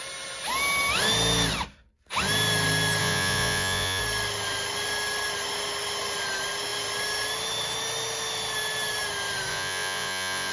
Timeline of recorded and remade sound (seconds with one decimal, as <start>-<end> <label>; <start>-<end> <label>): 0.0-3.0 recorded; 3.0-4.0 remade; 4.0-9.5 recorded; 9.5-10.5 remade